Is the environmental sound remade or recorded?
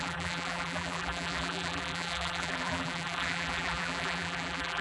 remade